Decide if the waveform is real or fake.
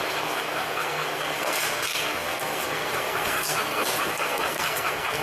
fake